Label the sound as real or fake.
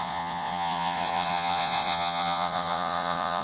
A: fake